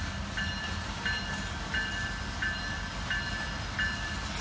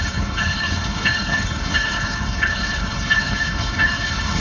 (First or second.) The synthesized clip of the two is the second